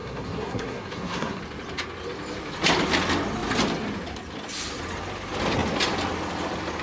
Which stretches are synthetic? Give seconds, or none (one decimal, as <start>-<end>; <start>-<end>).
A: 0.0-1.4